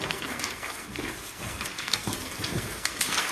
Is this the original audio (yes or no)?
no